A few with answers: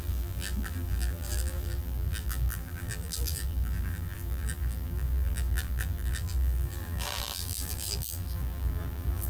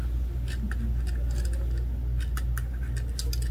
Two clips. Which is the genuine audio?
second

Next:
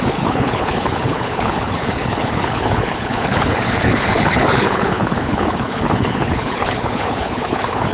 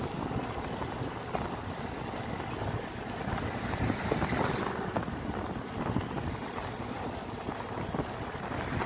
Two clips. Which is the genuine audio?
second